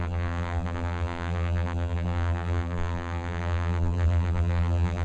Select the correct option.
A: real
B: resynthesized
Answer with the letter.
B